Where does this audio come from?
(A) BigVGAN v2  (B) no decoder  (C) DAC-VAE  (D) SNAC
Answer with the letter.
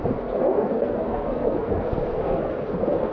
D